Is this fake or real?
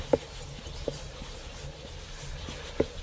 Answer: real